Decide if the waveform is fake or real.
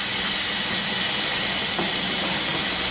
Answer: real